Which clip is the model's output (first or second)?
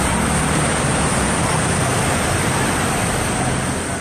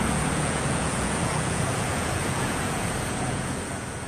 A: second